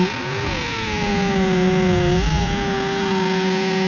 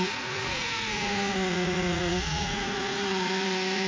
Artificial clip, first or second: second